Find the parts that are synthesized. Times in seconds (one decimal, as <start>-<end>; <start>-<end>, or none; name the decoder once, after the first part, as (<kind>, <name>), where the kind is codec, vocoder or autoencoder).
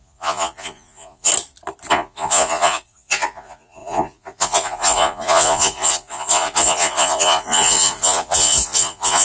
0.0-1.3 (vocoder, Vocos); 1.9-9.2